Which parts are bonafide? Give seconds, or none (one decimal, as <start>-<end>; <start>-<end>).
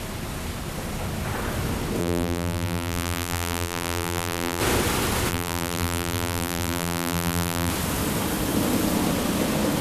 0.0-2.0; 4.6-5.3; 7.7-9.8